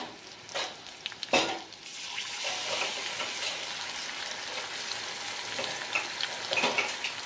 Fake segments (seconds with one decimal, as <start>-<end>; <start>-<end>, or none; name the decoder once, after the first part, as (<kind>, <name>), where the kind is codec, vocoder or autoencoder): none